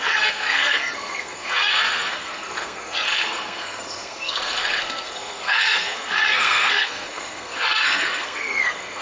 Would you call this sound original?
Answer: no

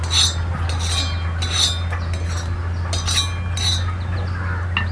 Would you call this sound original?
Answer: yes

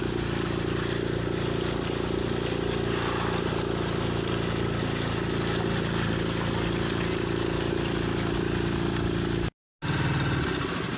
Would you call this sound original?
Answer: yes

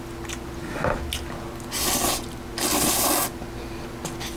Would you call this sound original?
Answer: yes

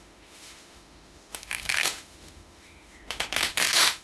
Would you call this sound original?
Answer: no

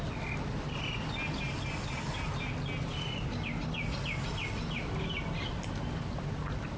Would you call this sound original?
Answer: yes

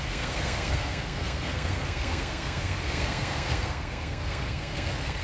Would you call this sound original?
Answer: no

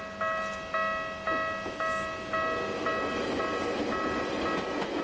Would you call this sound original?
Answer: yes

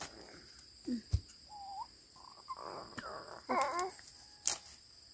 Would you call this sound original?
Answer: yes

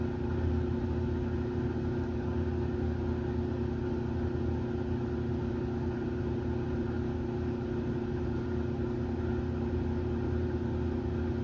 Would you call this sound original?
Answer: yes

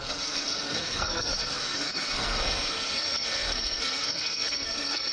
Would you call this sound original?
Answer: no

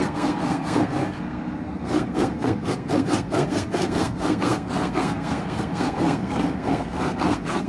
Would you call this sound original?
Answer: no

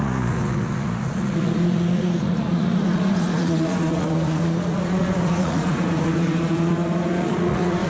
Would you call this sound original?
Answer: no